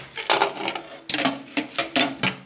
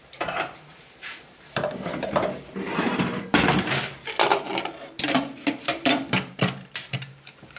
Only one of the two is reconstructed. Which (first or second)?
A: second